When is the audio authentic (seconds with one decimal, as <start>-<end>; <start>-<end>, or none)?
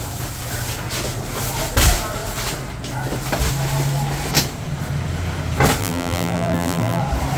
0.0-5.8; 7.0-7.4